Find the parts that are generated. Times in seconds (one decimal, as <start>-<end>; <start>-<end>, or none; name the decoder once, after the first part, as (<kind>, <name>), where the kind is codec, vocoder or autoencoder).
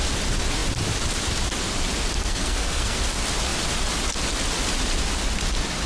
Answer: 2.2-3.0 (codec, SNAC)